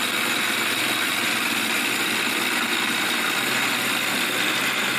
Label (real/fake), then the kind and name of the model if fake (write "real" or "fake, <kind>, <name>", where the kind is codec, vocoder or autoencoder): real